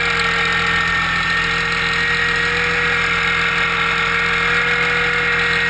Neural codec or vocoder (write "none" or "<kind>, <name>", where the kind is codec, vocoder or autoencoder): none